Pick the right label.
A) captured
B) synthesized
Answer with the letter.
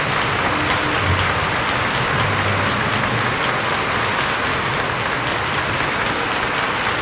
A